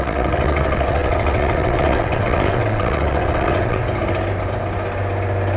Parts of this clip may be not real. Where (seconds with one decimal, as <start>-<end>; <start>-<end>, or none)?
0.0-3.8